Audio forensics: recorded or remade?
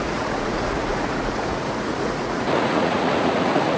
remade